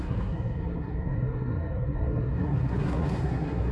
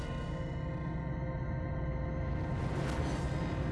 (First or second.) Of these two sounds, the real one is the second